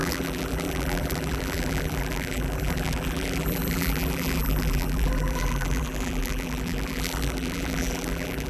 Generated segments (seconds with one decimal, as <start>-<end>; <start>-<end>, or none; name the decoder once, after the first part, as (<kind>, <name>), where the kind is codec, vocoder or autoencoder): 0.0-8.5 (vocoder, BigVGAN v2)

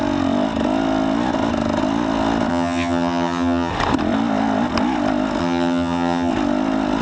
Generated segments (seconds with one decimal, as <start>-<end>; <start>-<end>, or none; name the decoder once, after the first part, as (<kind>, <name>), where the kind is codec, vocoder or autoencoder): 2.5-3.7 (vocoder, HiFi-GAN); 5.4-6.3